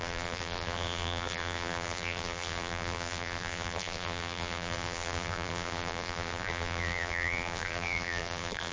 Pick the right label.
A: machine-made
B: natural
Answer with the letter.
A